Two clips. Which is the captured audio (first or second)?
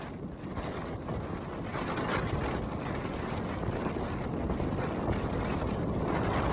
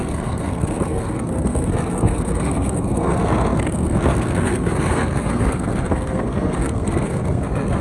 first